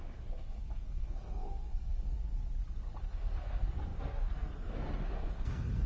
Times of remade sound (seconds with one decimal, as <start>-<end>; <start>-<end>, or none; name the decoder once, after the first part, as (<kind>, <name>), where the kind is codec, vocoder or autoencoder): 0.0-2.3 (codec, SNAC); 3.1-5.9